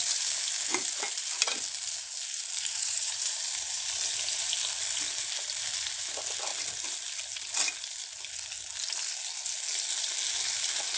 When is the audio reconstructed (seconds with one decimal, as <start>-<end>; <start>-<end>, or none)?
6.5-7.1